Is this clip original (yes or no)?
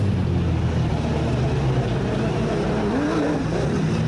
yes